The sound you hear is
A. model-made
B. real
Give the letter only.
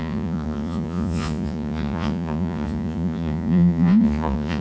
A